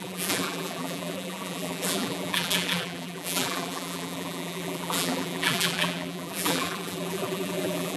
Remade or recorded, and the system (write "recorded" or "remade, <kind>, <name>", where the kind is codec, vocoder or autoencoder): remade, vocoder, BigVGAN v2